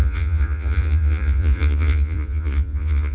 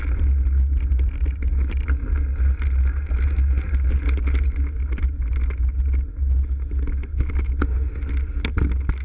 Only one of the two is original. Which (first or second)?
second